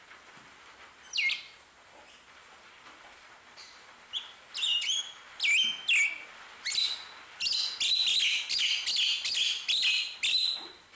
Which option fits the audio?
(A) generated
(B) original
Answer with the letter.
B